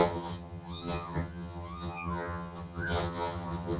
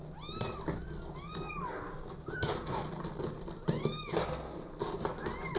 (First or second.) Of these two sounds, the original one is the second